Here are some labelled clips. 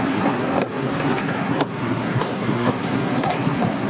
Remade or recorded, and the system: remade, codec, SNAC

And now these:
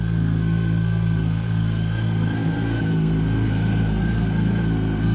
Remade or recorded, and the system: remade, codec, SNAC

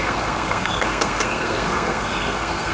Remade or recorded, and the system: remade, codec, SNAC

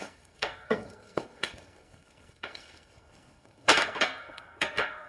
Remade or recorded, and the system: remade, codec, SNAC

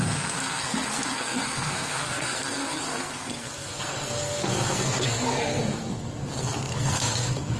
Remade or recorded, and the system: remade, codec, SNAC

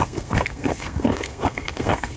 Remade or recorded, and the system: remade, codec, SNAC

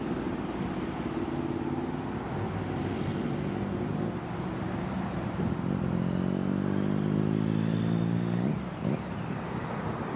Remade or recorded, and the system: recorded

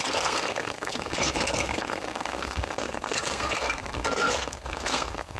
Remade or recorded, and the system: remade, codec, SNAC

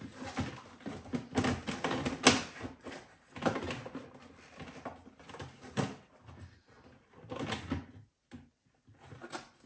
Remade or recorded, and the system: recorded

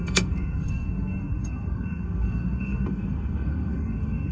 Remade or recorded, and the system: remade, codec, SNAC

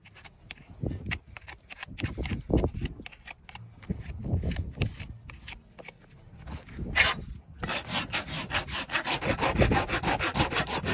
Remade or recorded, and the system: recorded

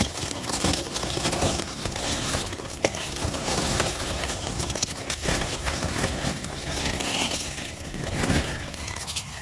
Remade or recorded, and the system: remade, codec, SNAC